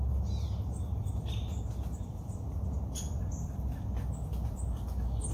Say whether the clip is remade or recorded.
recorded